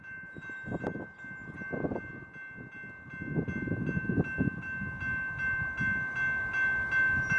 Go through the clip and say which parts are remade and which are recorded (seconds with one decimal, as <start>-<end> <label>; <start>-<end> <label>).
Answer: 0.0-7.4 recorded